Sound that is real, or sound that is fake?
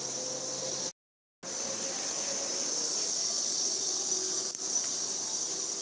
real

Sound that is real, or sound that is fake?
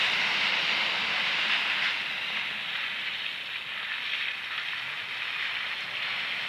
real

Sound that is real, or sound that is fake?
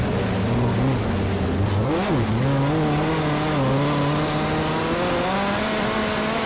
real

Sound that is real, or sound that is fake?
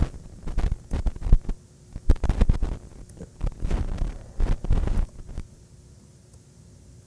real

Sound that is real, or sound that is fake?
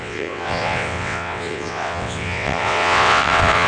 fake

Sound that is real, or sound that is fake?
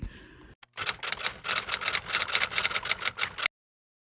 real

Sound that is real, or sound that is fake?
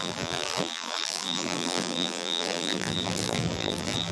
fake